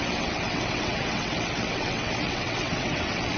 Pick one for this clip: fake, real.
fake